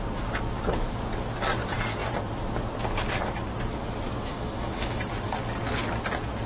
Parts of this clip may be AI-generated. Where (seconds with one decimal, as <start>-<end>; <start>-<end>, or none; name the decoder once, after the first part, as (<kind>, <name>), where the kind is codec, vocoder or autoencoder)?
4.3-5.0 (autoencoder, DAC-VAE)